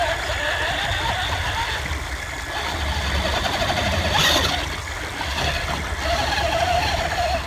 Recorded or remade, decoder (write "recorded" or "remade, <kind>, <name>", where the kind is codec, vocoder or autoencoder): recorded